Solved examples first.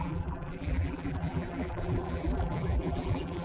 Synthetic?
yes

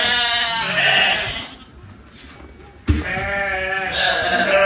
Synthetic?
no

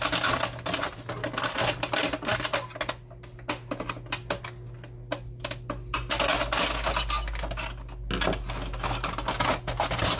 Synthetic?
no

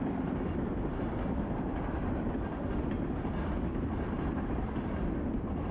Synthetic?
no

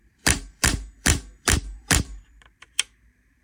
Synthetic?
yes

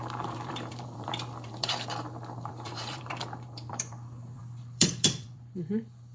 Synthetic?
yes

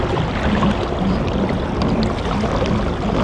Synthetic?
no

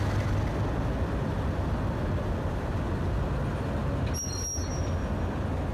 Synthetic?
no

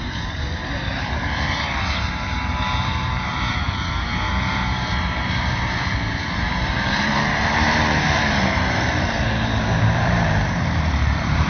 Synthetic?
yes